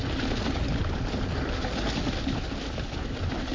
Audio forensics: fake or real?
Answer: real